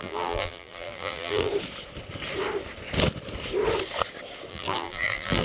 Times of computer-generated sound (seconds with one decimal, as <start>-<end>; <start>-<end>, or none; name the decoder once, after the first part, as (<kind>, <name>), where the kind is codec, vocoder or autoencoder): 0.0-1.5 (vocoder, BigVGAN v2); 4.5-5.4